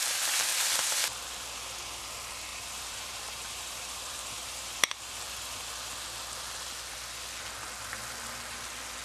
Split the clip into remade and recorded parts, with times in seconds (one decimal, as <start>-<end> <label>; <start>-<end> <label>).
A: 0.0-2.5 recorded; 2.5-5.1 remade; 5.1-9.0 recorded